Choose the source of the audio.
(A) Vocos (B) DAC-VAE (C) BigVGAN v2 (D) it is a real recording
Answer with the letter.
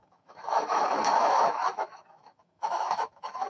B